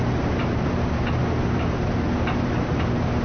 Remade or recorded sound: recorded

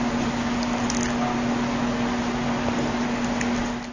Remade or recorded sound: recorded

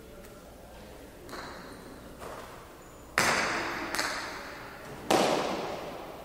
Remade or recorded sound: recorded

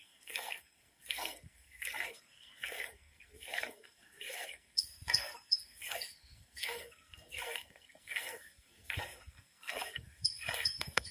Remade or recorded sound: remade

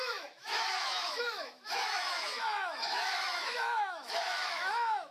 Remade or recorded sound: remade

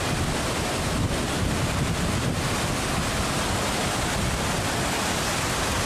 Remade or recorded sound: recorded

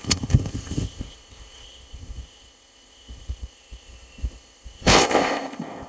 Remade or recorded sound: remade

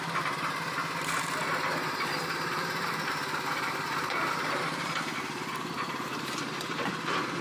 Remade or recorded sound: remade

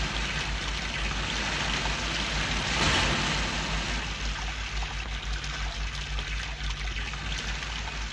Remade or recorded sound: recorded